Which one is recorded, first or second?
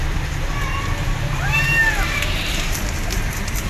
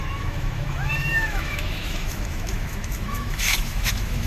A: first